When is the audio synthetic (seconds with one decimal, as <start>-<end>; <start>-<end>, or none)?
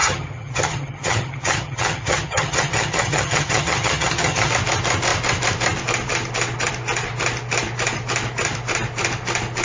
0.0-4.5